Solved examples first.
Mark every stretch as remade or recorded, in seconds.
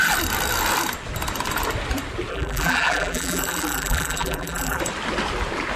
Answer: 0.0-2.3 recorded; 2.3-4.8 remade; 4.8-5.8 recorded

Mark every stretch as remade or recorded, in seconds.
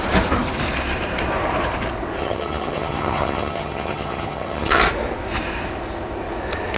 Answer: 0.0-2.2 recorded; 2.2-4.8 remade; 4.8-6.8 recorded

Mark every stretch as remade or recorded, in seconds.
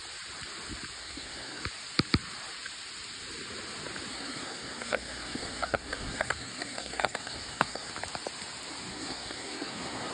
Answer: 0.0-1.0 recorded; 1.0-1.6 remade; 1.6-4.1 recorded; 4.1-7.9 remade; 7.9-8.9 recorded; 8.9-10.1 remade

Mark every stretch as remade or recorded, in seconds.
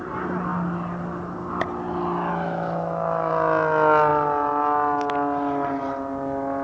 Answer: 0.0-2.3 recorded; 2.3-3.3 remade; 3.3-6.6 recorded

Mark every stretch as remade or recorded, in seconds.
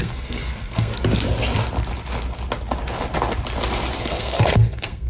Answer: 0.0-0.9 remade; 0.9-4.0 recorded; 4.0-5.1 remade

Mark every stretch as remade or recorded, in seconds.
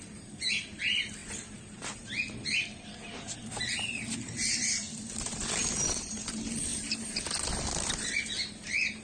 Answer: 0.0-9.0 recorded